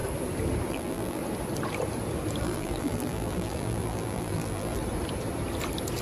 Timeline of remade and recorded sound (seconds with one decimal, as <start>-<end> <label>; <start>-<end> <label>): 0.0-0.7 recorded; 0.7-1.2 remade; 1.2-2.4 recorded; 2.4-4.8 remade; 4.8-6.0 recorded